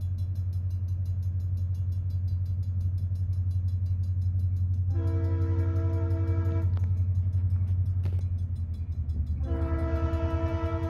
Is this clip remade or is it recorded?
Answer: recorded